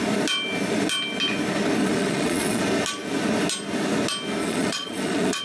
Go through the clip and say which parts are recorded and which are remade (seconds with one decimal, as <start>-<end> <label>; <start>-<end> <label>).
0.0-1.8 recorded; 1.8-2.6 remade; 2.6-4.4 recorded; 4.4-5.4 remade